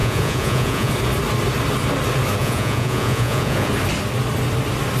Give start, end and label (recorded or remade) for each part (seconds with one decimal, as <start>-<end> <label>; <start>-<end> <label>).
0.0-0.9 remade; 0.9-2.4 recorded; 2.4-3.7 remade; 3.7-5.0 recorded